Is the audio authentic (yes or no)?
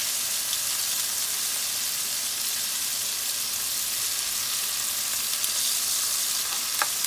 yes